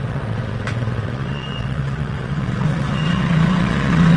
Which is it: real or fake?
fake